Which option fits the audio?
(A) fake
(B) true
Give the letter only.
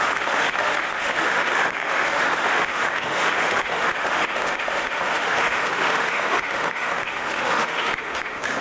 A